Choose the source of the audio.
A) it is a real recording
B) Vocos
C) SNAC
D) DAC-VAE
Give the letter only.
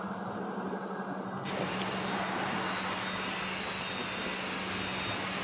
A